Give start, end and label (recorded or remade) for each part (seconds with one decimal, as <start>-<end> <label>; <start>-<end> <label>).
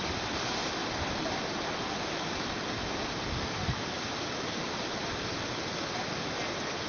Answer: 0.0-3.4 recorded; 3.4-4.1 remade; 4.1-6.9 recorded